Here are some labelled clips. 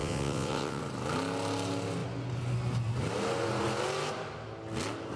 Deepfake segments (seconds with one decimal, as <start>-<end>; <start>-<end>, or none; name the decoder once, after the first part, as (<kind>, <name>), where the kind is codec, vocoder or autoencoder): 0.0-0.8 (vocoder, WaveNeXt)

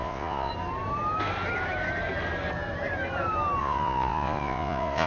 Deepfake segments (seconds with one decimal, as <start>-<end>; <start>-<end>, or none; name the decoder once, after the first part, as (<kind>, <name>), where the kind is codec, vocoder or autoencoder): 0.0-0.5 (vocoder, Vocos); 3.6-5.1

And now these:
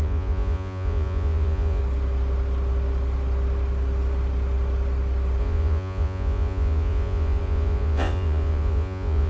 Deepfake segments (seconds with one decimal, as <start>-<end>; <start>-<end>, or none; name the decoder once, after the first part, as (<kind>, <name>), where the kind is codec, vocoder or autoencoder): 0.0-1.8 (vocoder, Vocos); 5.4-9.3

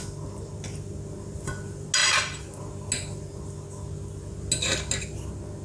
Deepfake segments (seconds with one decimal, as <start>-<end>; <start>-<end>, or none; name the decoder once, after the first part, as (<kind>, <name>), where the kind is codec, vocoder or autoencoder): none